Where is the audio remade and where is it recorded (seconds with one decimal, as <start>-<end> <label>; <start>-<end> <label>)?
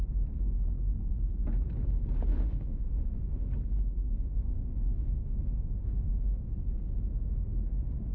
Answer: 0.0-2.3 recorded; 2.3-3.5 remade; 3.5-4.1 recorded; 4.1-6.5 remade; 6.5-7.1 recorded; 7.1-8.1 remade